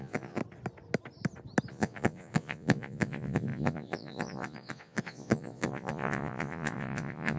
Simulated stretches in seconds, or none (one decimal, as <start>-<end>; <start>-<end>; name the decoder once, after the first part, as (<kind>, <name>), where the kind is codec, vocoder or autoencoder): 0.0-0.4 (vocoder, Vocos); 1.7-7.4